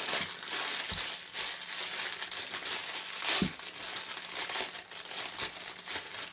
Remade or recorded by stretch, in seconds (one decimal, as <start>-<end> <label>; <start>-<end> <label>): 0.0-6.3 recorded